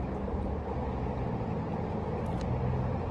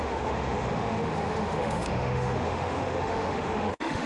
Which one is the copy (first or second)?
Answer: second